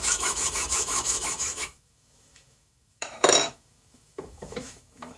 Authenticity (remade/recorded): remade